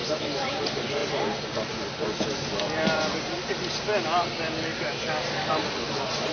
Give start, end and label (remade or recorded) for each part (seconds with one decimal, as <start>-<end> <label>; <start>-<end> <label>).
0.0-0.6 remade; 0.6-6.3 recorded